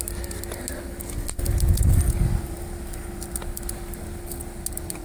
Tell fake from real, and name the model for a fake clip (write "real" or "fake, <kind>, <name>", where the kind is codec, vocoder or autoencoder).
real